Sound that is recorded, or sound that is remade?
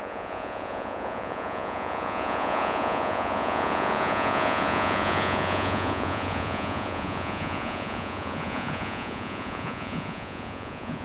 remade